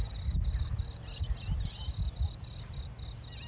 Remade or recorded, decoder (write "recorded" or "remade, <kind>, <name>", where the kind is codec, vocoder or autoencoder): recorded